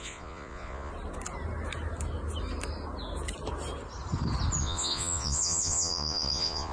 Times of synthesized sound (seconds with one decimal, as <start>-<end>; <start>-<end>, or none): 0.0-0.9; 4.6-6.7